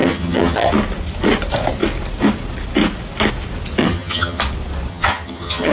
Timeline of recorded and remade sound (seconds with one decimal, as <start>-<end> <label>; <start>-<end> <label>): 0.0-0.7 remade; 0.7-3.8 recorded; 3.8-4.4 remade; 4.4-4.9 recorded; 4.9-5.7 remade